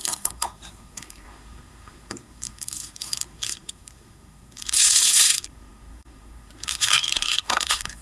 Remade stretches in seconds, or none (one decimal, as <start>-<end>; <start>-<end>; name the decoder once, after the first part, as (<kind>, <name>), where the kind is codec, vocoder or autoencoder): 0.0-8.0 (codec, SNAC)

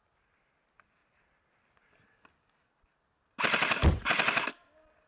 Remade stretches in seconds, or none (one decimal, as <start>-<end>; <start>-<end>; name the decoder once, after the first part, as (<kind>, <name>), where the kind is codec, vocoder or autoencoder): none

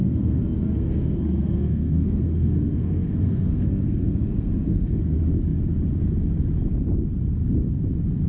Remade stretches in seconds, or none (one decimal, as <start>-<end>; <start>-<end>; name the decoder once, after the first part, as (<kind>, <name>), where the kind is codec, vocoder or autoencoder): 0.0-5.0 (codec, SNAC)

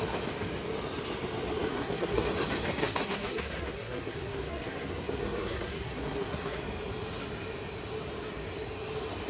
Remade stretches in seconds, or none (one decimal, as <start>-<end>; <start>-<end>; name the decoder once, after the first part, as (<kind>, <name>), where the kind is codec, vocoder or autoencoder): 1.7-2.3 (codec, SNAC); 2.8-6.6

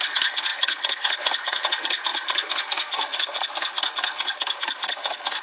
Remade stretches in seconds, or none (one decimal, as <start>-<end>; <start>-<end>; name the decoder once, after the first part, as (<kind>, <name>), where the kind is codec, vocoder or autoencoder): 0.0-5.4 (codec, SNAC)

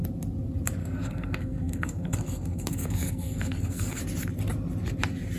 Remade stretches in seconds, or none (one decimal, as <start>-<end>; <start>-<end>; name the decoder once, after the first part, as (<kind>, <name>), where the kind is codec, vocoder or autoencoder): 0.8-4.0 (codec, SNAC)

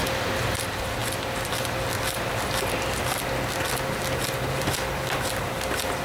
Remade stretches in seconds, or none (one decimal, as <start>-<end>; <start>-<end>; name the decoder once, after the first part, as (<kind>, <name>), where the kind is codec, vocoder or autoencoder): none